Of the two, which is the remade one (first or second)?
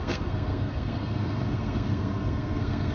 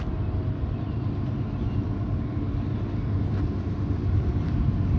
first